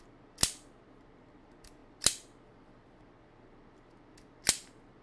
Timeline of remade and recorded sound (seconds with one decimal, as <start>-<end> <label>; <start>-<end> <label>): 0.0-5.0 recorded